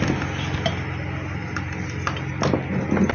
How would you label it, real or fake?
real